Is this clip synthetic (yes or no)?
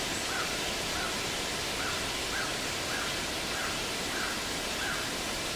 no